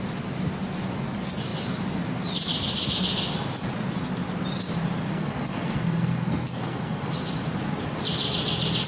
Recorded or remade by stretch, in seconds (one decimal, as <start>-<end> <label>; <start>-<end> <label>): 0.0-5.1 recorded; 5.1-7.1 remade; 7.1-8.9 recorded